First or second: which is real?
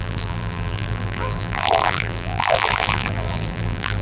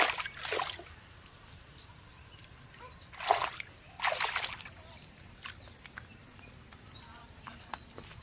second